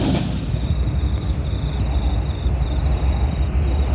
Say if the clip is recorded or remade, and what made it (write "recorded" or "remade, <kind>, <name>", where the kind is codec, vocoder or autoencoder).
recorded